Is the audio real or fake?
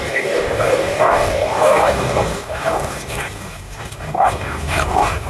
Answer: fake